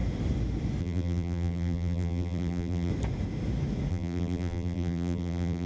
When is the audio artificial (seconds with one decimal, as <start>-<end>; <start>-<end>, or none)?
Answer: 0.8-2.9; 3.9-5.7